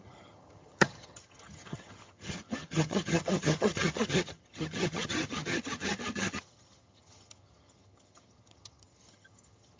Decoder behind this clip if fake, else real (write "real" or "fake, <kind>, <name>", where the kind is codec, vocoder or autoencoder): fake, vocoder, HiFi-GAN